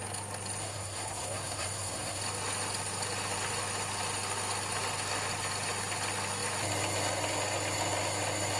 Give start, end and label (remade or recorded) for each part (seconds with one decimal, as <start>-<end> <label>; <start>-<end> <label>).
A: 0.0-0.6 recorded; 0.6-2.2 remade; 2.2-8.6 recorded